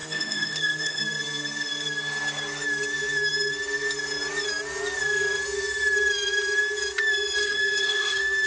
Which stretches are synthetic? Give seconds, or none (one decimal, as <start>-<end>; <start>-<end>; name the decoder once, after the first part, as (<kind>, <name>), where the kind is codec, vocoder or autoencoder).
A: 0.0-1.0 (codec, SNAC); 7.4-8.5